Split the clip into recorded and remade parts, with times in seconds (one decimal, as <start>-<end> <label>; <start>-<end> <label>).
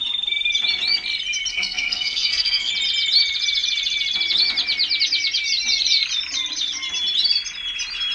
0.0-1.5 recorded; 1.5-2.7 remade; 2.7-8.1 recorded